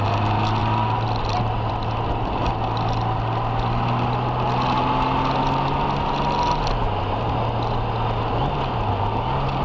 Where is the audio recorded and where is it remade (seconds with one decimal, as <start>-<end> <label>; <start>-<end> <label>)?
0.0-9.6 recorded